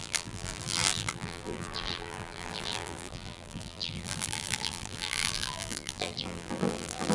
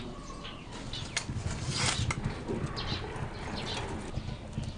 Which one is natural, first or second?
second